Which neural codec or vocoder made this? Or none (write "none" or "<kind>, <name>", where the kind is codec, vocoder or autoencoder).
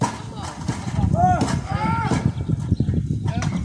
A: none